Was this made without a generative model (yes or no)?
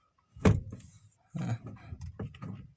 no